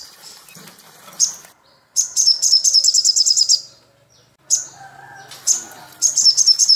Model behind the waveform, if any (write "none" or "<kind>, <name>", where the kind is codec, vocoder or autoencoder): none